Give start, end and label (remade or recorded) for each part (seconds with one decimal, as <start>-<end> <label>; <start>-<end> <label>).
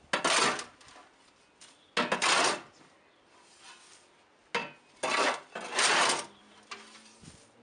0.0-7.6 recorded